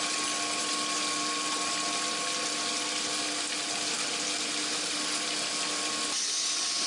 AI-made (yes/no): no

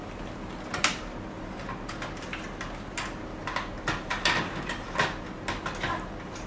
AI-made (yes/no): no